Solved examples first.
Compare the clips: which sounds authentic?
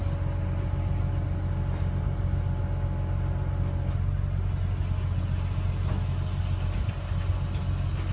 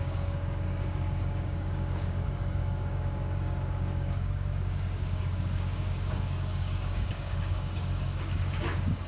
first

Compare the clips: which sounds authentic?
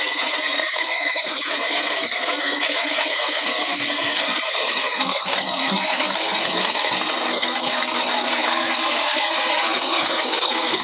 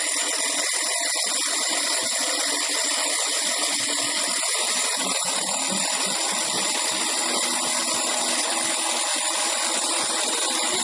second